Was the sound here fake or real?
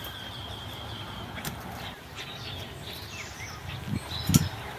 real